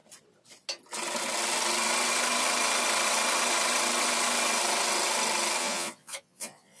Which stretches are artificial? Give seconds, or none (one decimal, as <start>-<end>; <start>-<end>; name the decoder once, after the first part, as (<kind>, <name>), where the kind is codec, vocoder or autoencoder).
5.6-6.8 (vocoder, Vocos)